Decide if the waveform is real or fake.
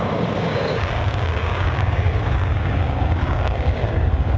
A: fake